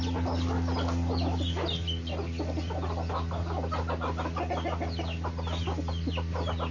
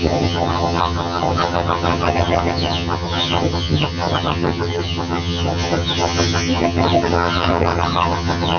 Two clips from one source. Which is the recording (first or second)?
first